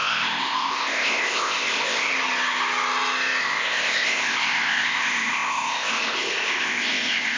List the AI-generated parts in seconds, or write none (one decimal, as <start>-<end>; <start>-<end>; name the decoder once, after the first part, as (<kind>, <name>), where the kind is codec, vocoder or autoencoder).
0.0-2.1 (codec, ZipCodec); 3.4-7.4